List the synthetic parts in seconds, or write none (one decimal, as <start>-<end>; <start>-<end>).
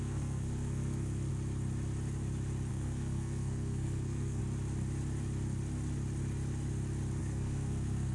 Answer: 0.0-1.3; 2.7-4.4; 7.2-8.1